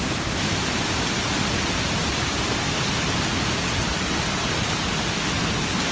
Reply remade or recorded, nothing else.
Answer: recorded